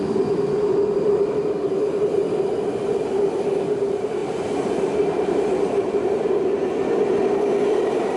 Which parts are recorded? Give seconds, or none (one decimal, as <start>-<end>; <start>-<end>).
0.0-8.2